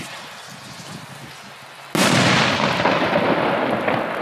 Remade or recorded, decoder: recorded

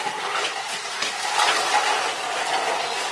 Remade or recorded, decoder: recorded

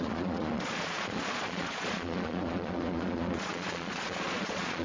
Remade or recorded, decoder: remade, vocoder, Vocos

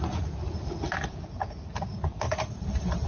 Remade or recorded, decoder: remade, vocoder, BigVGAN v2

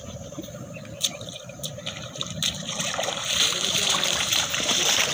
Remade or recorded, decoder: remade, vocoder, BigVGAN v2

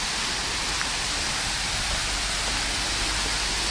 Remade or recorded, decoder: recorded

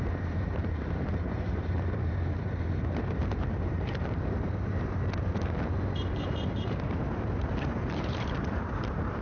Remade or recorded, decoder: remade, vocoder, BigVGAN v2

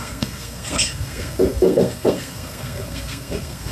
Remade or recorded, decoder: remade, codec, SNAC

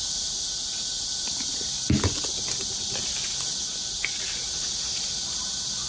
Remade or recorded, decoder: recorded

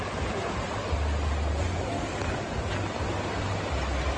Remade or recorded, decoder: recorded